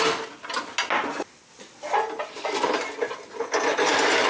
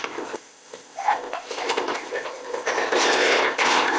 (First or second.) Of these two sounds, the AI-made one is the second